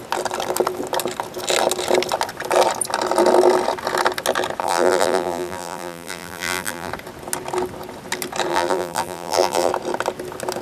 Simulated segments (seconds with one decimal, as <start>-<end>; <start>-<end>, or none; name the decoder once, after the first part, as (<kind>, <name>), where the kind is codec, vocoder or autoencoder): 4.6-6.9 (vocoder, BigVGAN v2); 8.5-9.7